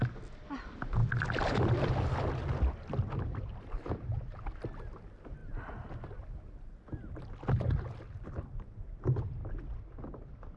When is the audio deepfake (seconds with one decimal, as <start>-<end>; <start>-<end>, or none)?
none